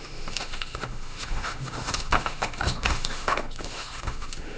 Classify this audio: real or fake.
fake